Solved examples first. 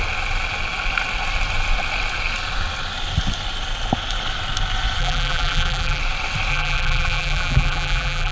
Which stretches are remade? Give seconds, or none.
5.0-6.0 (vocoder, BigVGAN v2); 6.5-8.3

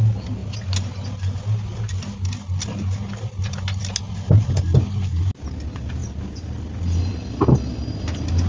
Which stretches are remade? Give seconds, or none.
none

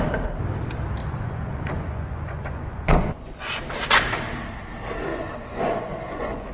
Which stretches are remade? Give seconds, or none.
1.0-3.6 (vocoder, Vocos); 5.1-6.5

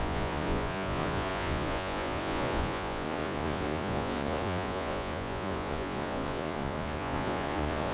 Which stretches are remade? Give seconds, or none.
0.0-7.9 (vocoder, Vocos)